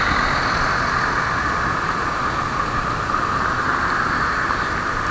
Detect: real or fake real